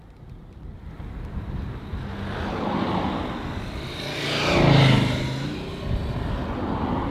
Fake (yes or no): no